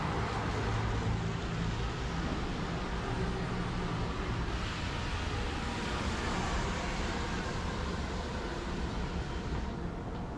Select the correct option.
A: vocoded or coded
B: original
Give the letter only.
B